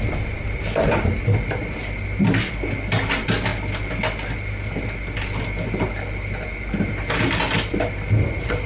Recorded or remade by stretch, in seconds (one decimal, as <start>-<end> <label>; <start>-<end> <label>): 0.0-8.7 recorded